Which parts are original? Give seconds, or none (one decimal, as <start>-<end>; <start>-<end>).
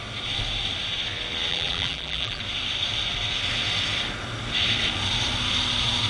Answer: 0.0-1.5; 2.4-6.1